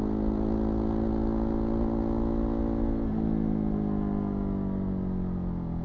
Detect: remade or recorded recorded